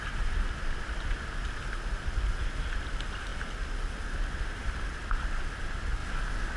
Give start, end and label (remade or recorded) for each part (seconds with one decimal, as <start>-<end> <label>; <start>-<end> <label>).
0.0-6.6 recorded